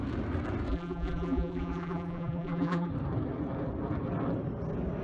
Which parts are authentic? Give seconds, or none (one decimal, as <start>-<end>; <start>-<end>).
0.0-0.7; 2.9-5.0